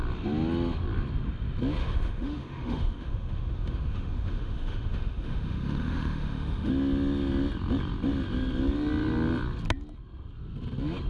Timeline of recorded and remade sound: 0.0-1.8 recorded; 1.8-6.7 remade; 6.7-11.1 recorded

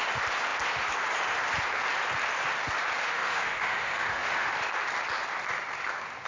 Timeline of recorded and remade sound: 0.0-3.0 recorded; 3.0-4.5 remade; 4.5-6.3 recorded

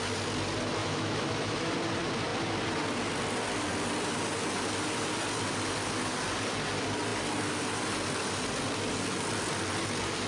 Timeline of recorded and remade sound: 0.0-0.8 recorded; 0.8-1.7 remade; 1.7-10.3 recorded

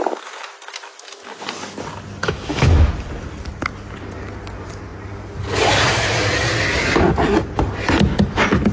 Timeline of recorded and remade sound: 0.0-2.2 recorded; 2.2-2.9 remade; 2.9-8.7 recorded

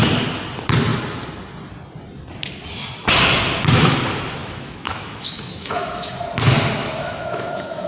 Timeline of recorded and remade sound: 0.0-4.4 recorded; 4.4-6.2 remade; 6.2-6.8 recorded; 6.8-7.9 remade

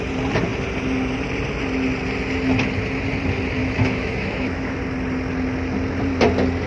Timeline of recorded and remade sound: 0.0-3.6 recorded; 3.6-4.8 remade; 4.8-6.7 recorded

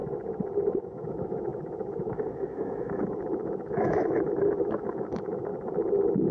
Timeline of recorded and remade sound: 0.0-0.8 recorded; 0.8-5.5 remade; 5.5-6.3 recorded

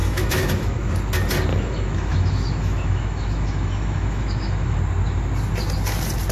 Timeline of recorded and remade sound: 0.0-0.9 remade; 0.9-1.5 recorded; 1.5-4.8 remade; 4.8-6.3 recorded